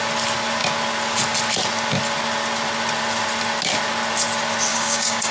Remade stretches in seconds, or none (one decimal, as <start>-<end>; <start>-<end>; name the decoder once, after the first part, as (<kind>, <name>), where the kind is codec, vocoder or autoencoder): 4.7-5.3 (codec, DAC)